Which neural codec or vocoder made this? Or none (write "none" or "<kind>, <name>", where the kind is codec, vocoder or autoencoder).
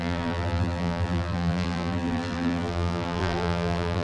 vocoder, BigVGAN v2